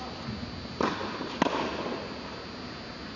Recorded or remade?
recorded